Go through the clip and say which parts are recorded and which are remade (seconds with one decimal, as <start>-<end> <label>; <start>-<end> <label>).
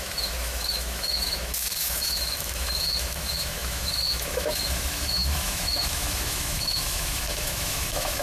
0.0-8.2 remade